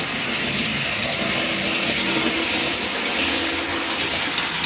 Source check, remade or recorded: recorded